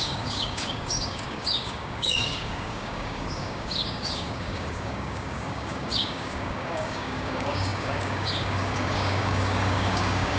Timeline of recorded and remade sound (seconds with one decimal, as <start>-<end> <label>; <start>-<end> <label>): 0.0-10.4 remade